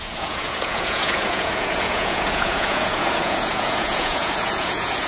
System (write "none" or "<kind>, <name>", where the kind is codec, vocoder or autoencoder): vocoder, Vocos